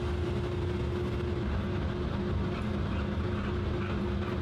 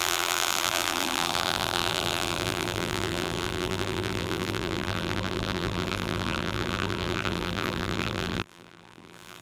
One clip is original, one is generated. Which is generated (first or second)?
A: second